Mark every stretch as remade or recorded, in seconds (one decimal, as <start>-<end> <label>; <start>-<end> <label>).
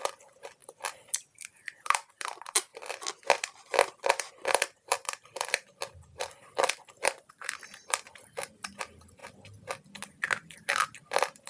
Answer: 0.0-2.7 remade; 2.7-4.1 recorded; 4.1-9.2 remade; 9.2-11.0 recorded; 11.0-11.5 remade